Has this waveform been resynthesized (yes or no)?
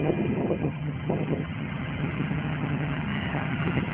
yes